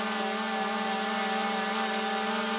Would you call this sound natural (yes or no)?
yes